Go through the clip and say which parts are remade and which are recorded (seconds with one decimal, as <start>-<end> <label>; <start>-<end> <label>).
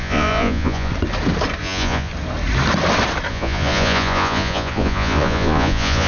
0.0-0.9 remade; 0.9-1.6 recorded; 1.6-2.1 remade; 2.1-3.3 recorded; 3.3-6.1 remade